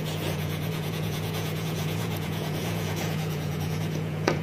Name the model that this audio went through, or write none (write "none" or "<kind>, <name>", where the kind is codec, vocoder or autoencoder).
vocoder, Vocos